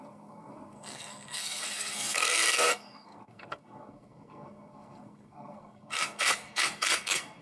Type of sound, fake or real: fake